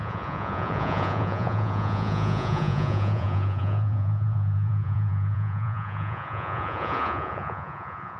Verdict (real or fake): fake